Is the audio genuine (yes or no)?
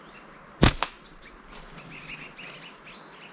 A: yes